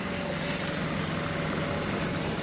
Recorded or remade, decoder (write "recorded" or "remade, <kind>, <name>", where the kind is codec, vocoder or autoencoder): recorded